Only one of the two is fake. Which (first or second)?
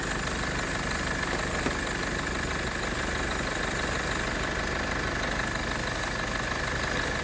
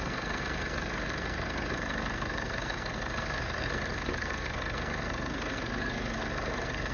second